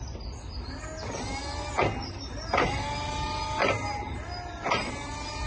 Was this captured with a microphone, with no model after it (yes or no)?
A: yes